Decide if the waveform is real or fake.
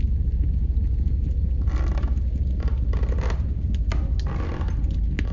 real